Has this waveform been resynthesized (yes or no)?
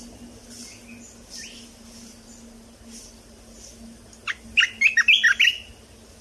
no